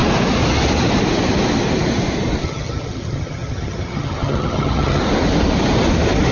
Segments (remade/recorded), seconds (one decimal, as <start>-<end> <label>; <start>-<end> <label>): 0.0-2.4 recorded; 2.4-5.0 remade; 5.0-6.3 recorded